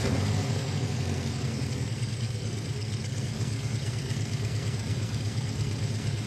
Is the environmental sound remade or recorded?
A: remade